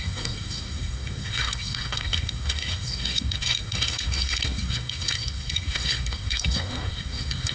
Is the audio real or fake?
fake